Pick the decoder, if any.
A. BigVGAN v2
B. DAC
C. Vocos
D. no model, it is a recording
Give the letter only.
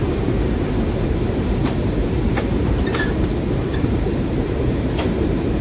A